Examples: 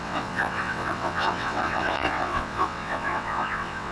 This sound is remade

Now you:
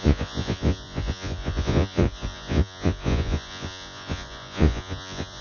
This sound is remade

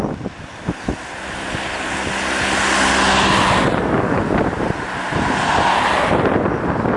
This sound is recorded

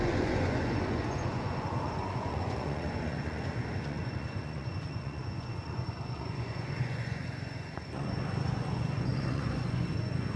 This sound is remade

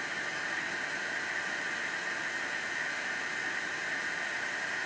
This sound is recorded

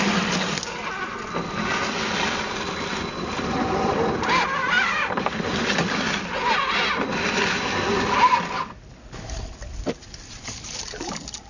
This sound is recorded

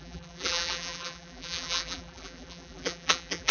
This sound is remade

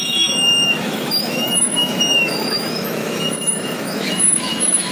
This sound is remade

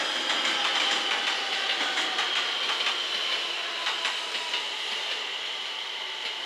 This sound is recorded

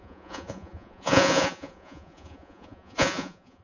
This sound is remade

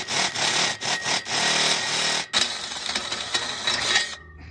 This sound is recorded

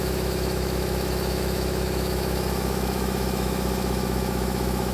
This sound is remade